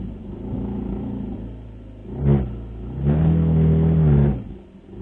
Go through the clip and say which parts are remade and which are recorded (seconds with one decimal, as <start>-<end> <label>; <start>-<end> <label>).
0.0-5.0 recorded